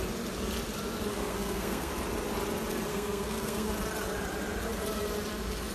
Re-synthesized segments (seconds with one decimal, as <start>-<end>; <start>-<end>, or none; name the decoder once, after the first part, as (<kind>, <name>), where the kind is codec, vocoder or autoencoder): 1.1-1.9 (codec, SNAC); 2.9-3.7